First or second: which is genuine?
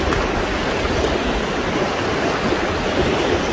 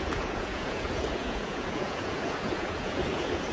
first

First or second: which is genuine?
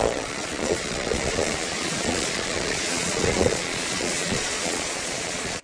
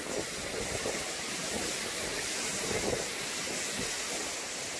second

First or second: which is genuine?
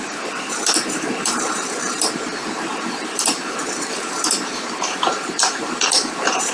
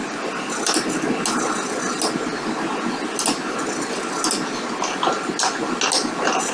second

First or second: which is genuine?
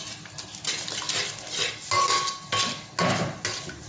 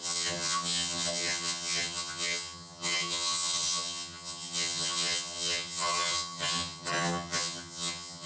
first